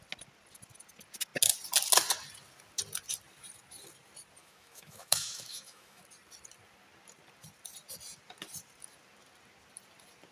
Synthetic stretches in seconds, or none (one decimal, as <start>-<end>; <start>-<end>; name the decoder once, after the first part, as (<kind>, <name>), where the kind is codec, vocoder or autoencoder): 4.4-6.0 (autoencoder, DAC-VAE)